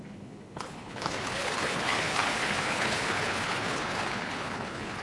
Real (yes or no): no